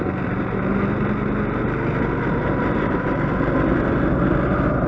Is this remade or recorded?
recorded